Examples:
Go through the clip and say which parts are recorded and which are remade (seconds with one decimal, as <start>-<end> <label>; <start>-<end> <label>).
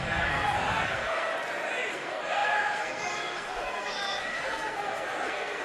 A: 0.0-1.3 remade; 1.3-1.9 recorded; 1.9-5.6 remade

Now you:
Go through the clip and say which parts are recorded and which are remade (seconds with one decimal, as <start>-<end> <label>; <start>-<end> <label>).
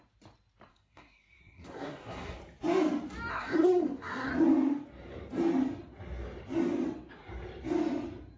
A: 0.0-0.7 recorded; 0.7-2.4 remade; 2.4-3.3 recorded; 3.3-4.3 remade; 4.3-8.4 recorded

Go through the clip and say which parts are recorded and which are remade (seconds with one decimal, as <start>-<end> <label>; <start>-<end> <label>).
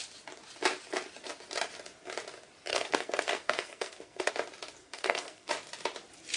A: 0.0-2.7 recorded; 2.7-4.3 remade; 4.3-4.8 recorded; 4.8-5.5 remade; 5.5-6.4 recorded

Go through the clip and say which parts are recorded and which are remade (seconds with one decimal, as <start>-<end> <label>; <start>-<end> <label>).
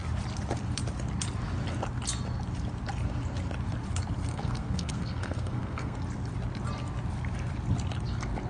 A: 0.0-4.3 recorded; 4.3-6.0 remade; 6.0-8.5 recorded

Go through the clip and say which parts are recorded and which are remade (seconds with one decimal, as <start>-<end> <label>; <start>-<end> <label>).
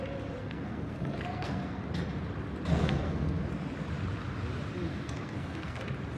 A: 0.0-0.4 recorded; 0.4-1.8 remade; 1.8-2.7 recorded; 2.7-3.4 remade; 3.4-4.9 recorded; 4.9-5.8 remade; 5.8-6.2 recorded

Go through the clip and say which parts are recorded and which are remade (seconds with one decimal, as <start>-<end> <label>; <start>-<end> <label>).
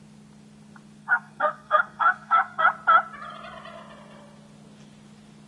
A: 0.0-1.0 recorded; 1.0-2.6 remade; 2.6-5.5 recorded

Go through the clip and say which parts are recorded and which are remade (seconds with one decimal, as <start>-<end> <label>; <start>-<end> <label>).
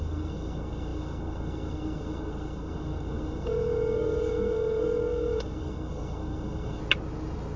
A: 0.0-6.8 remade; 6.8-7.6 recorded